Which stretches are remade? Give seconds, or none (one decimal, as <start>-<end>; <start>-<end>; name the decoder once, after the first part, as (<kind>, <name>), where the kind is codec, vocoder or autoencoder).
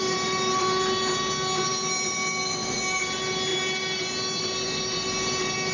none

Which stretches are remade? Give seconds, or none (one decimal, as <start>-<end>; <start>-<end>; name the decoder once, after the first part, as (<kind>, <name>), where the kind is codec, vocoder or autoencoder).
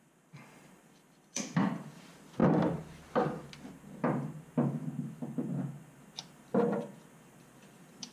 0.0-2.4 (vocoder, BigVGAN v2); 6.3-8.1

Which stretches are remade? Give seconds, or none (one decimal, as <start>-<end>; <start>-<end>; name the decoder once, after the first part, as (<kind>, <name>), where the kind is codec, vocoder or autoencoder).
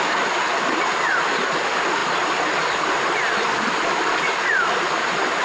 0.5-1.3 (vocoder, BigVGAN v2); 2.0-3.0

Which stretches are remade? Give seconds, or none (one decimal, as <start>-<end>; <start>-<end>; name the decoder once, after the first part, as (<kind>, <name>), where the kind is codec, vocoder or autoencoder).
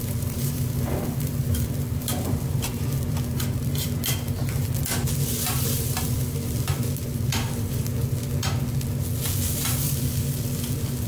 0.0-7.9 (vocoder, BigVGAN v2); 9.4-11.1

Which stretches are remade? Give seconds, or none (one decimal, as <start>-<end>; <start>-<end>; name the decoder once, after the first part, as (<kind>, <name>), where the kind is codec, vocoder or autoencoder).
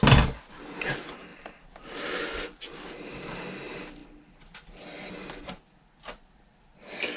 1.3-2.0 (vocoder, BigVGAN v2)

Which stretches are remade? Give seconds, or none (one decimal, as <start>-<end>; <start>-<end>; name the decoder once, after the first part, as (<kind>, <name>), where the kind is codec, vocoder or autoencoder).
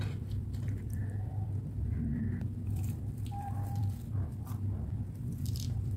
0.0-6.0 (vocoder, BigVGAN v2)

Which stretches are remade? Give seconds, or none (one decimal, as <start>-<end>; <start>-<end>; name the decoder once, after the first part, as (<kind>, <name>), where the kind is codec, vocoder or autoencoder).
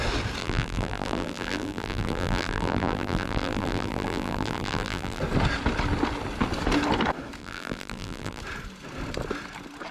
0.4-5.2 (vocoder, BigVGAN v2); 7.4-8.4